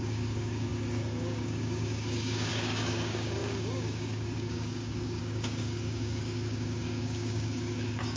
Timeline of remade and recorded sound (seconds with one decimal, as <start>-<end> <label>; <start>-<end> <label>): 0.0-8.2 remade